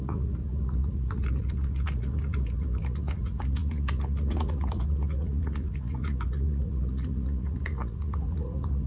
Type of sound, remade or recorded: remade